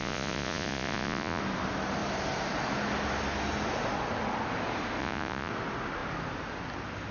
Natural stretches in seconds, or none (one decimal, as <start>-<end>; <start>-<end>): 1.4-5.0; 5.5-7.1